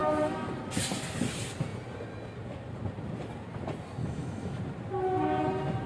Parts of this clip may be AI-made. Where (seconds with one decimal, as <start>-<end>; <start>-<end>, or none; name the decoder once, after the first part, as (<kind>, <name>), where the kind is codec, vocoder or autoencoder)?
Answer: 0.0-0.5 (autoencoder, DAC-VAE); 4.0-4.6